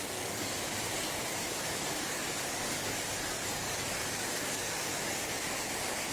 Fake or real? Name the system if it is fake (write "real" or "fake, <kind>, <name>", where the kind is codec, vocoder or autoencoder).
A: fake, codec, DAC